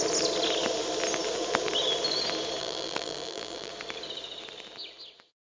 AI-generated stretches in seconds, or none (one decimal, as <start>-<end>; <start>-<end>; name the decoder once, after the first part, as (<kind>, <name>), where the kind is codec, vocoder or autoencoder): 2.6-3.7 (vocoder, BigVGAN v2)